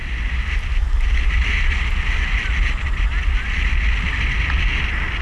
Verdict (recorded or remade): recorded